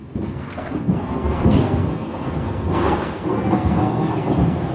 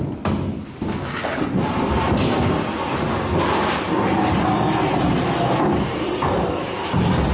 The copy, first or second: first